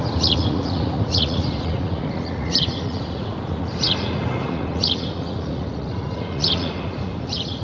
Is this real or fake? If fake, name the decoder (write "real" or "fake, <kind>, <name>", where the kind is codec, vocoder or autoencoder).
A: fake, vocoder, Vocos